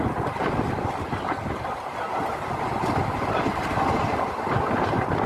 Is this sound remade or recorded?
recorded